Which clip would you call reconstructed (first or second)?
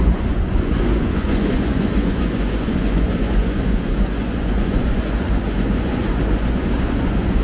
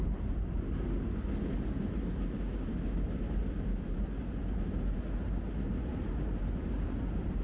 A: first